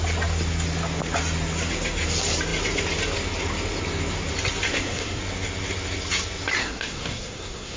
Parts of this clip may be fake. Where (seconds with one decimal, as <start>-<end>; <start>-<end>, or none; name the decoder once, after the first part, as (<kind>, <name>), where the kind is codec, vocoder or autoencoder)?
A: 4.7-5.2 (codec, SNAC); 6.6-7.8